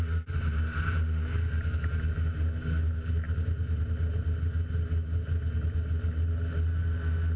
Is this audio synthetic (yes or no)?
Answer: no